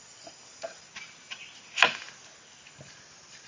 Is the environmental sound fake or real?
real